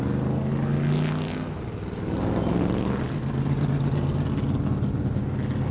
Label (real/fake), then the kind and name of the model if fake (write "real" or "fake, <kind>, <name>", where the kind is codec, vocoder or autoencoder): real